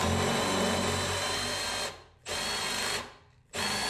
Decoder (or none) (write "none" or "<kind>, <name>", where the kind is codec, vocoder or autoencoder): none